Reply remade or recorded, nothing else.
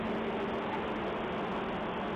recorded